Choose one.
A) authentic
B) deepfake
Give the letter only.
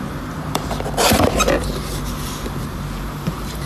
B